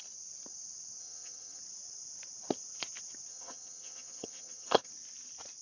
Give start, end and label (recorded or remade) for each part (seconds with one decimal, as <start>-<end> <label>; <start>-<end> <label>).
0.0-1.0 recorded; 1.0-1.6 remade; 1.6-3.3 recorded; 3.3-4.9 remade; 4.9-5.6 recorded